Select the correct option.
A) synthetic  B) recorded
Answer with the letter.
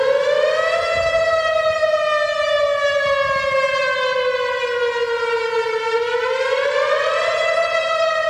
B